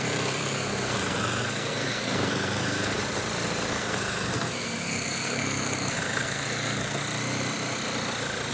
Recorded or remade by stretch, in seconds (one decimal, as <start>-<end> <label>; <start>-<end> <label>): 0.0-3.0 remade; 3.0-3.7 recorded; 3.7-7.0 remade; 7.0-8.5 recorded